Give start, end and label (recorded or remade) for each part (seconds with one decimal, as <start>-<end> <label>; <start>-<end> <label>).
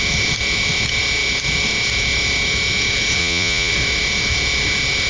0.0-3.2 recorded; 3.2-3.7 remade; 3.7-5.1 recorded